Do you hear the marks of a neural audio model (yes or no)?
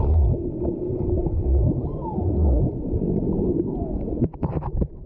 no